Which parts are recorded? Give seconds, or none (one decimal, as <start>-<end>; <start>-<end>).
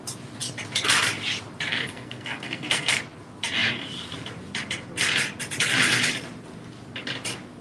0.0-1.7; 3.0-7.6